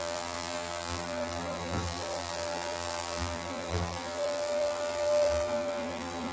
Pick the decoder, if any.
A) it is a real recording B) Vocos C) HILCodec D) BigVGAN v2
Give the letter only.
D